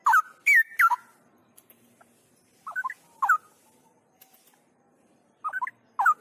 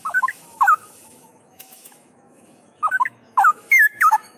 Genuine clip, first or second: first